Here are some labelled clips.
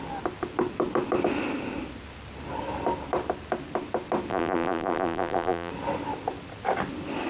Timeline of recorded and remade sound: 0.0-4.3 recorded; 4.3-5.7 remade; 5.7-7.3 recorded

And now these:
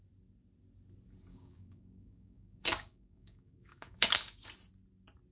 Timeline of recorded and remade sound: 0.0-1.3 recorded; 1.3-4.5 remade; 4.5-5.3 recorded

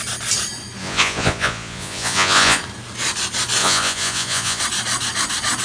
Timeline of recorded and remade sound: 0.0-0.8 recorded; 0.8-2.6 remade; 2.6-3.6 recorded; 3.6-4.6 remade; 4.6-5.6 recorded

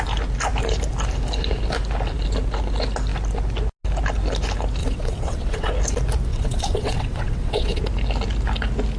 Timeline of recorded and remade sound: 0.0-4.8 recorded; 4.8-5.7 remade; 5.7-6.3 recorded; 6.3-7.8 remade; 7.8-9.0 recorded

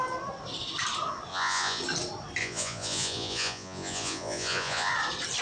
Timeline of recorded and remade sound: 0.0-1.3 recorded; 1.3-1.8 remade; 1.8-2.4 recorded; 2.4-4.9 remade; 4.9-5.4 recorded

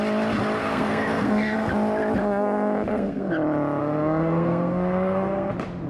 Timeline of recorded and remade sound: 0.0-0.6 recorded; 0.6-1.7 remade; 1.7-2.2 recorded; 2.2-3.3 remade; 3.3-3.8 recorded; 3.8-5.5 remade; 5.5-5.9 recorded

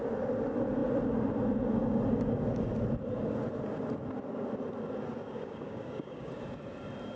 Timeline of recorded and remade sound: 0.0-5.2 recorded; 5.2-6.3 remade; 6.3-7.2 recorded